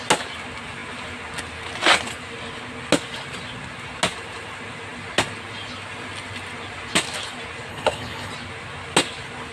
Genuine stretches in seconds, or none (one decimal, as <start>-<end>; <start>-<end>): 0.0-7.7; 8.3-9.5